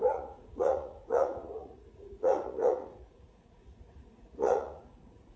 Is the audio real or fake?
fake